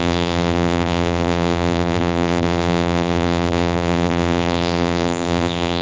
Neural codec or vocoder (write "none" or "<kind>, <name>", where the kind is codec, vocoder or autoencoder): vocoder, BigVGAN v2